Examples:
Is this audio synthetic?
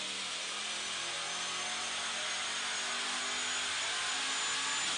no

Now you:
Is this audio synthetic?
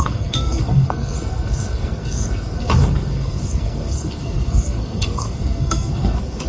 yes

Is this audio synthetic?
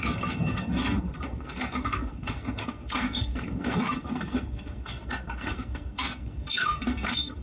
yes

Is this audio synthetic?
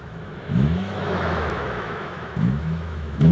yes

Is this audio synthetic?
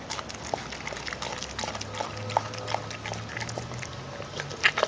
no